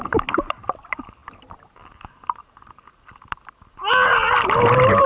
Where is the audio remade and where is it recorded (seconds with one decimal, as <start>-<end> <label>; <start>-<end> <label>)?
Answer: 0.0-5.1 recorded